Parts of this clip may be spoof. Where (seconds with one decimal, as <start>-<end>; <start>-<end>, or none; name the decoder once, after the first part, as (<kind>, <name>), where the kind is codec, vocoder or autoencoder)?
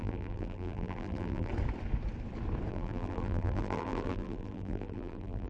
0.0-1.5 (vocoder, BigVGAN v2); 2.7-5.5